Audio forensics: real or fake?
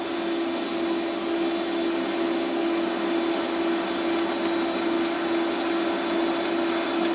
real